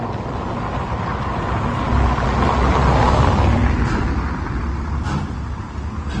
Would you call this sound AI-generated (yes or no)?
no